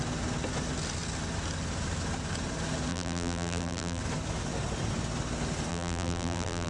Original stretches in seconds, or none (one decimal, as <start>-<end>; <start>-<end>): 0.0-2.9; 4.0-5.7